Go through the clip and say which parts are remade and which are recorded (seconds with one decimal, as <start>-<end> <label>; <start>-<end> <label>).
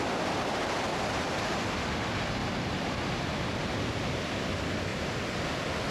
0.0-0.9 recorded; 0.9-1.6 remade; 1.6-2.4 recorded; 2.4-4.1 remade; 4.1-4.9 recorded; 4.9-5.4 remade; 5.4-5.9 recorded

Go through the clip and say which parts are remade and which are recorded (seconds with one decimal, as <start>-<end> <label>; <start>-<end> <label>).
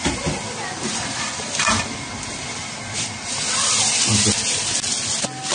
0.0-0.7 recorded; 0.7-1.3 remade; 1.3-5.5 recorded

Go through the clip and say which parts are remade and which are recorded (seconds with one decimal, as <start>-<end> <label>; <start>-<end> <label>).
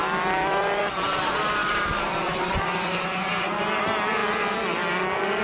0.0-1.6 recorded; 1.6-3.8 remade; 3.8-5.4 recorded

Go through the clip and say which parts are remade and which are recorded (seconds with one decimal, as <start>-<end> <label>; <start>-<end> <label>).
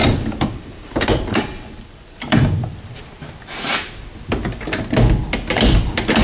0.0-3.0 remade; 3.0-6.2 recorded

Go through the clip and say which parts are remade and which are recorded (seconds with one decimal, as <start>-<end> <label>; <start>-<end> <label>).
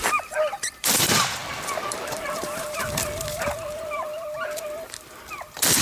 0.0-5.8 remade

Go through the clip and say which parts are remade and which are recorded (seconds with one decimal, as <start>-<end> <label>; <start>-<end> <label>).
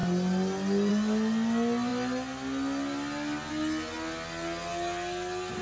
0.0-5.6 recorded